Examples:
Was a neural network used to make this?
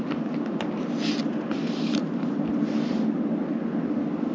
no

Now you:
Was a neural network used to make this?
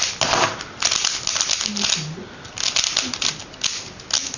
no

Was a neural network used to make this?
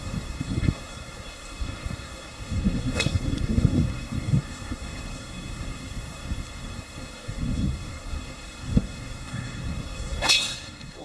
yes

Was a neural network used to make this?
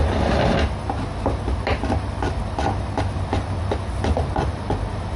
no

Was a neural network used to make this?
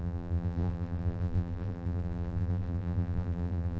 yes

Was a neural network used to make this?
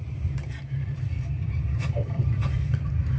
yes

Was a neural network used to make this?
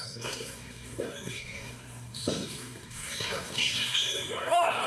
yes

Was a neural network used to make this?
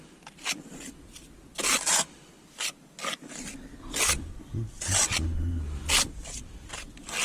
no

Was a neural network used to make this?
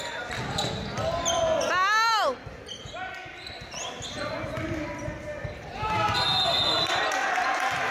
no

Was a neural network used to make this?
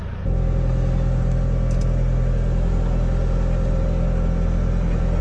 no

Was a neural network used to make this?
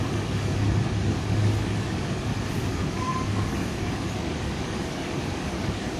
yes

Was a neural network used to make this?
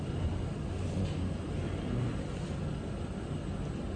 no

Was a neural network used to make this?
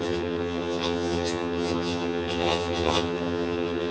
yes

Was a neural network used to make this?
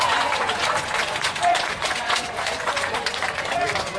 yes